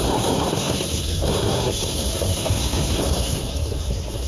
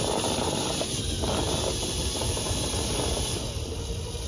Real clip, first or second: second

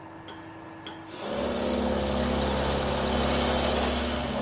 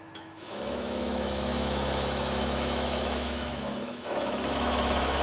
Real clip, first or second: first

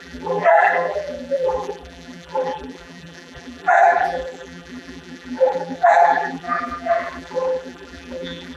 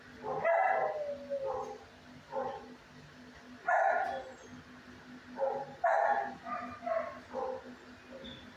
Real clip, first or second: second